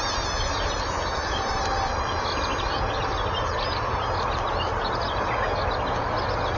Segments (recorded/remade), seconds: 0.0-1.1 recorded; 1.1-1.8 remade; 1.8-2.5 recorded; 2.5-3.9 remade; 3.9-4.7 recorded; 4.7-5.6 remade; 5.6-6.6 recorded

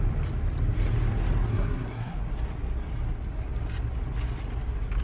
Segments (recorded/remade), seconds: 0.0-1.5 recorded; 1.5-2.2 remade; 2.2-5.0 recorded

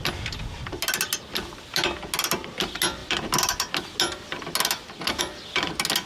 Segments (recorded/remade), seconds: 0.0-6.1 recorded

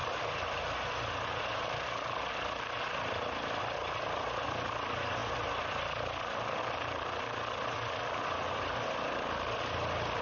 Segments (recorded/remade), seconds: 0.0-2.3 remade; 2.3-10.2 recorded

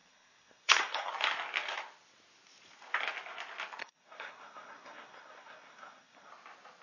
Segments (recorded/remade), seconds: 0.0-1.1 remade; 1.1-3.8 recorded; 3.8-6.3 remade; 6.3-6.8 recorded

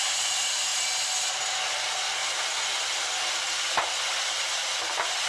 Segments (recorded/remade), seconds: 0.0-5.3 recorded